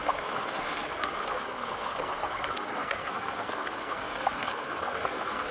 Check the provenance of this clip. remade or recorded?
remade